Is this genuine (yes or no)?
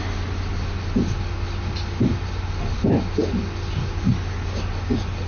yes